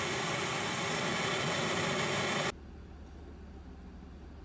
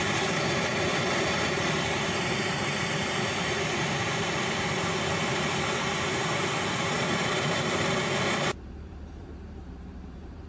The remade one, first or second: second